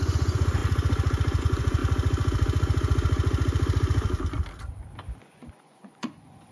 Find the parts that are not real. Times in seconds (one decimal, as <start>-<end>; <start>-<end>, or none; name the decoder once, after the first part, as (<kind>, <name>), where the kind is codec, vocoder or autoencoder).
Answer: 0.0-0.6 (vocoder, Vocos); 1.4-1.8; 5.2-6.5